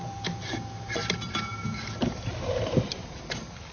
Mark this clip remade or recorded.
remade